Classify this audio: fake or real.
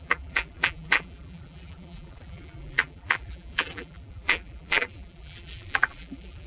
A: fake